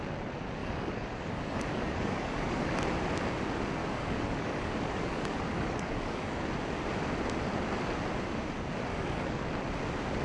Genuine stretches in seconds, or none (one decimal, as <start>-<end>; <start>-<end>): 0.0-0.6; 2.7-3.8; 6.4-8.9; 9.4-10.2